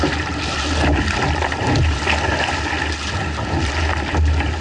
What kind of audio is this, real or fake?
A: real